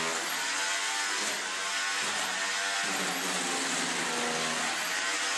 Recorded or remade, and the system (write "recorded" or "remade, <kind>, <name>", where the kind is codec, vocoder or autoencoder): recorded